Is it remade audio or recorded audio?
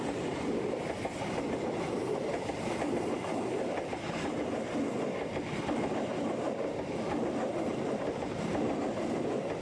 recorded